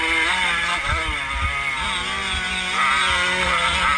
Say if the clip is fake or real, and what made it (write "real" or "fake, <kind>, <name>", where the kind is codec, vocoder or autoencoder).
real